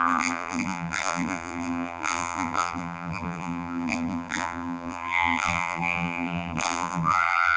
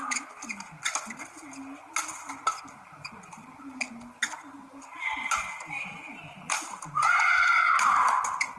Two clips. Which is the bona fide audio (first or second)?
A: second